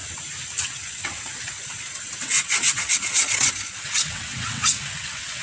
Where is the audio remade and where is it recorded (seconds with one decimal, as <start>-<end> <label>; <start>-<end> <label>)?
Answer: 0.0-0.6 recorded; 0.6-1.7 remade; 1.7-2.2 recorded; 2.2-5.4 remade